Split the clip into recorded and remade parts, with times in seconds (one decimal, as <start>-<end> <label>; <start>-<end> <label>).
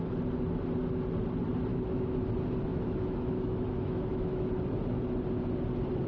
0.0-1.7 recorded; 1.7-2.2 remade; 2.2-2.7 recorded; 2.7-4.5 remade; 4.5-6.1 recorded